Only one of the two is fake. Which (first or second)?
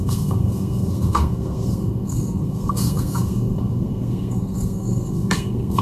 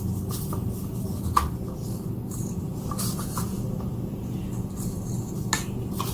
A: first